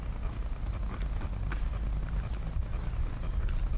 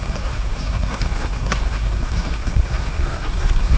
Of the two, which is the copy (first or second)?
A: second